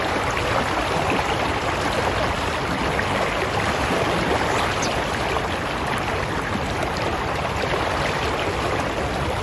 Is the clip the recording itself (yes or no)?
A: yes